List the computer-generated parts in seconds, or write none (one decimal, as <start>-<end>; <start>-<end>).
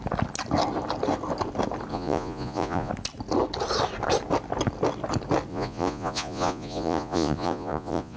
1.9-2.9; 5.5-8.2